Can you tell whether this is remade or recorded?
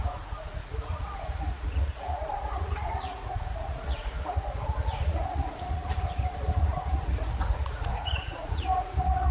remade